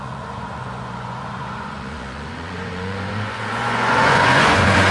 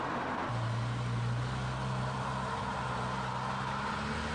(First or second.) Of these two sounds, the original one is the second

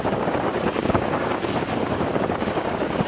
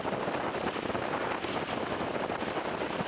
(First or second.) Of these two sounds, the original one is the second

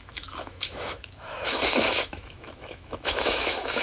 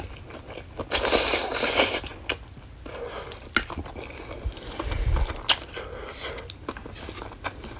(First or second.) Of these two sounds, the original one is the second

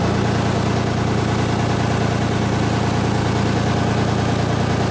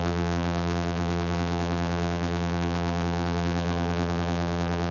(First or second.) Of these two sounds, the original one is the first